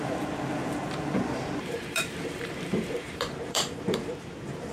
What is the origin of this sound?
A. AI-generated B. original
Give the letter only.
A